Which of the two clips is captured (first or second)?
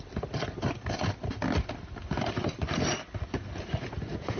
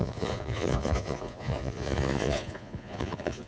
first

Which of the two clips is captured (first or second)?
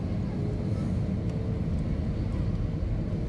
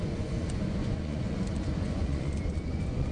first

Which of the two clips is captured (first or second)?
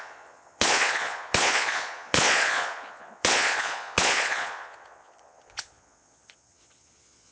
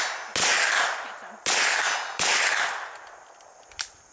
second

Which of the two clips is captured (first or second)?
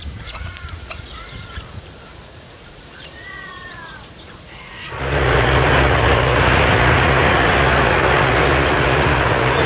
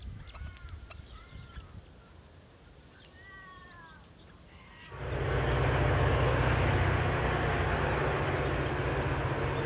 second